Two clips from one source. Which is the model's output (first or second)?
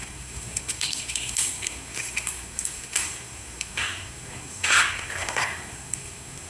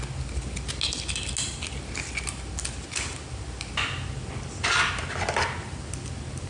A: first